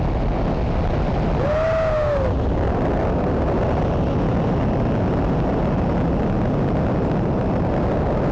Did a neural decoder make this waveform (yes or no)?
no